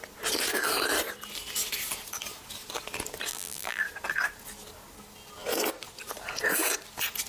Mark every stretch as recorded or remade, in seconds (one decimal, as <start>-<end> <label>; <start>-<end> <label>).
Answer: 0.0-3.3 recorded; 3.3-3.8 remade; 3.8-7.3 recorded

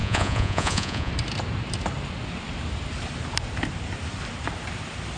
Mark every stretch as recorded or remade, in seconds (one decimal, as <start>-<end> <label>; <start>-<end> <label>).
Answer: 0.0-1.1 remade; 1.1-5.2 recorded

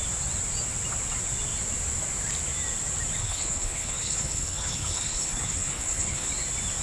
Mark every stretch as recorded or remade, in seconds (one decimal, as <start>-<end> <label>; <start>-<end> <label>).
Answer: 0.0-3.2 recorded; 3.2-6.3 remade; 6.3-6.8 recorded

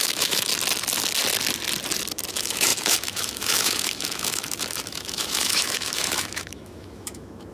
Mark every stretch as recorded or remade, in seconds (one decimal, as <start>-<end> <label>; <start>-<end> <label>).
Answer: 0.0-0.5 remade; 0.5-2.3 recorded; 2.3-7.5 remade

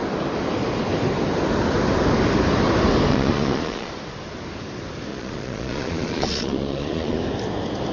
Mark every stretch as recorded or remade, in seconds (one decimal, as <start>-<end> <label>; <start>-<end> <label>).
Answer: 0.0-3.1 recorded; 3.1-3.9 remade; 3.9-5.1 recorded; 5.1-7.2 remade; 7.2-7.9 recorded

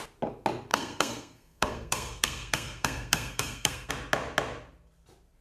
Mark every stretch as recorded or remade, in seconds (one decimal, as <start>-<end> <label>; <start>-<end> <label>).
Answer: 0.0-0.7 recorded; 0.7-3.9 remade; 3.9-5.4 recorded

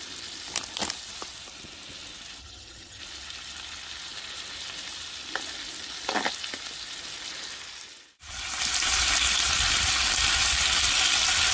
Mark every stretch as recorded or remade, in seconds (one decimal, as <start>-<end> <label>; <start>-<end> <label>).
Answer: 0.0-2.4 recorded; 2.4-3.0 remade; 3.0-11.5 recorded